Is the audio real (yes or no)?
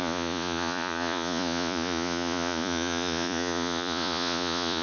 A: no